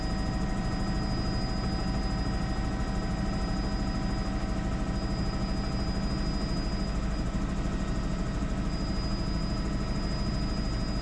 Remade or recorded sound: recorded